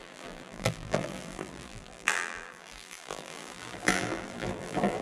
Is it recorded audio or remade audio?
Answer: remade